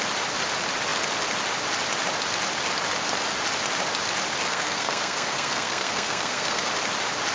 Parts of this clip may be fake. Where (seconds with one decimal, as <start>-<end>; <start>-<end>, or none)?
4.5-6.7